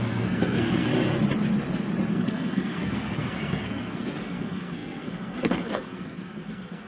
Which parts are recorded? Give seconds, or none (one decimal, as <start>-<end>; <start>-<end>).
0.9-2.1